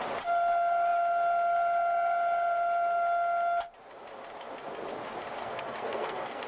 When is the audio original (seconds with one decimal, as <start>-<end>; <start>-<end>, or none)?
0.0-5.4